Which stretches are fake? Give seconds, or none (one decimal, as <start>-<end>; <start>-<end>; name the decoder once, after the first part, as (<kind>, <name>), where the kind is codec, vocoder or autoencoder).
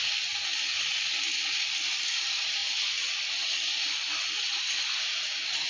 none